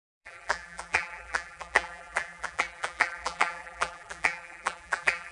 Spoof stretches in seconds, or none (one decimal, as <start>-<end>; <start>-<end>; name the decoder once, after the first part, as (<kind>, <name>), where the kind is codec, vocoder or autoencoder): 0.0-5.3 (vocoder, BigVGAN v2)